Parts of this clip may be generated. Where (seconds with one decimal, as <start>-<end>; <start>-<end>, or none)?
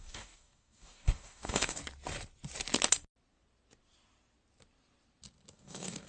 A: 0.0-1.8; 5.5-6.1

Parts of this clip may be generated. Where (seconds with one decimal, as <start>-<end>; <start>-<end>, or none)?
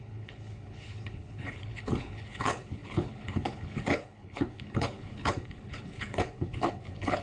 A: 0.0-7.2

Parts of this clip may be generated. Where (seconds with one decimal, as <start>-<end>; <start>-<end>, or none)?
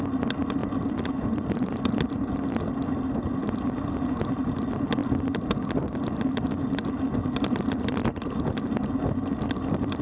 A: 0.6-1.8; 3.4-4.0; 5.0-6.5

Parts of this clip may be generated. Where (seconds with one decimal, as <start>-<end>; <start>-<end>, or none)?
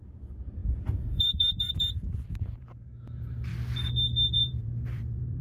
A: 0.0-3.5; 4.3-5.4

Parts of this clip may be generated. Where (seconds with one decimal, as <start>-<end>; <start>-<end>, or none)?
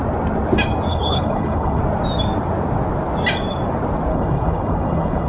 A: 0.9-1.8; 4.1-5.3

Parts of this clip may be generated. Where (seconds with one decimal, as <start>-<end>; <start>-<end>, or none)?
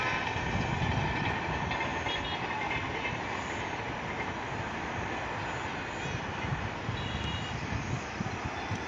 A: none